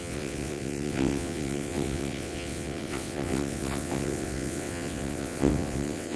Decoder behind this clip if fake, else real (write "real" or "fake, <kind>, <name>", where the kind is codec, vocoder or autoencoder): fake, vocoder, WaveNeXt